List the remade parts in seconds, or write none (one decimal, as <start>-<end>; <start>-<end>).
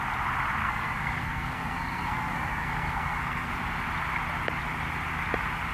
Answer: 0.6-3.5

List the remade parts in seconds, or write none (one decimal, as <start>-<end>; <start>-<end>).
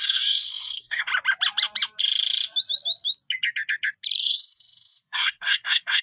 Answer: 0.0-1.1; 4.2-6.0